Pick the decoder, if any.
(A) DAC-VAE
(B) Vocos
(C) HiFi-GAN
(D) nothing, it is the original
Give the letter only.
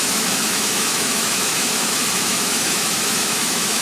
A